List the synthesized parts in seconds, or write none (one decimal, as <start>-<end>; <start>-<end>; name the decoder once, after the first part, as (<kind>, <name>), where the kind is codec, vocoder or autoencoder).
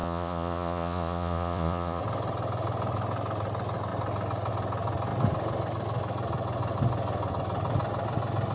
0.0-2.0 (vocoder, Vocos)